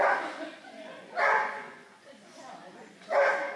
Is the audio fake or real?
fake